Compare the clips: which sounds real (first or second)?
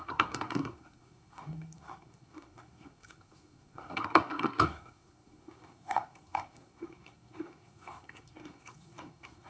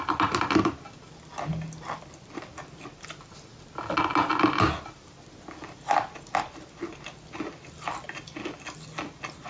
second